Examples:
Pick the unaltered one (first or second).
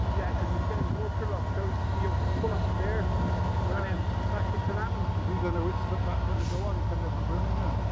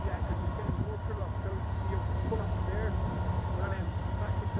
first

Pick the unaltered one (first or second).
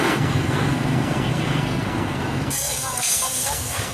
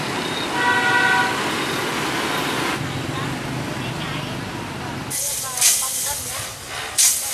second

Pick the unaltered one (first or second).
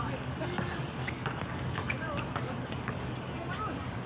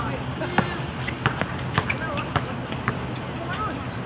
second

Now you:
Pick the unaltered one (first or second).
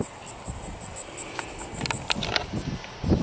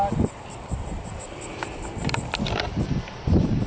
first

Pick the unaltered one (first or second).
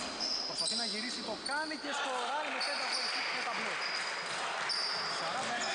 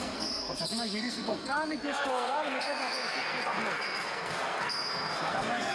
first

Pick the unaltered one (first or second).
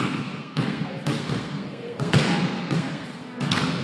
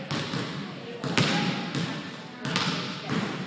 second